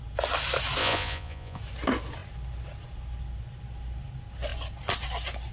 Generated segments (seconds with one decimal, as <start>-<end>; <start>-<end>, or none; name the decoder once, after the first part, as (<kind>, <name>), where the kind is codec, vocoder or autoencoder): 0.8-1.6 (vocoder, Vocos)